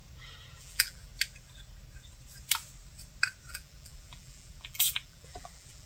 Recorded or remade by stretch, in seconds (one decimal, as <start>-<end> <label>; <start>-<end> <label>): 0.0-0.6 recorded; 0.6-1.1 remade; 1.1-3.5 recorded; 3.5-5.9 remade